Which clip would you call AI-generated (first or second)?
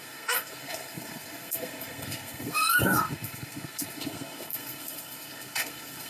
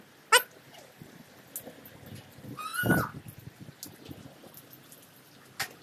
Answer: first